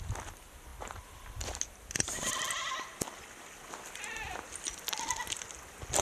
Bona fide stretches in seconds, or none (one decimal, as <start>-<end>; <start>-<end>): 0.0-6.0